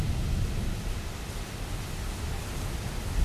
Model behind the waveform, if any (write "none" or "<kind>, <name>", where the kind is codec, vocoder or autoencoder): none